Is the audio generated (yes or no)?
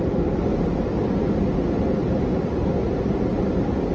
no